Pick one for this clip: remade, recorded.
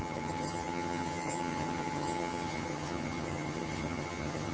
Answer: remade